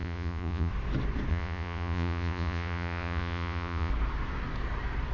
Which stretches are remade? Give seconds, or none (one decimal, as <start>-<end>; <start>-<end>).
0.0-0.7; 1.3-3.9